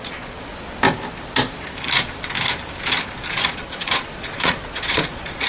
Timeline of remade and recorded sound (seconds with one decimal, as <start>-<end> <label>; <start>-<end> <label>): 0.0-0.5 remade; 0.5-3.3 recorded; 3.3-5.5 remade